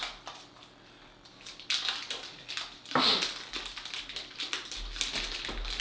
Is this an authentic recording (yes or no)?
yes